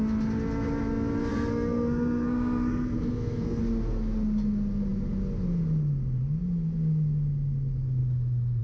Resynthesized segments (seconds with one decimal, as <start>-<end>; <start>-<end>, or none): 1.3-3.6